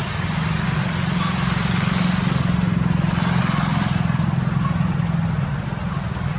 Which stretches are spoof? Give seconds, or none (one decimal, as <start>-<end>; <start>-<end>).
none